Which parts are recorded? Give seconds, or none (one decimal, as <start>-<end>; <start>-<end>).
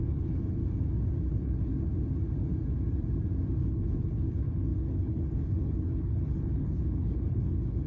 0.6-1.3; 1.9-3.6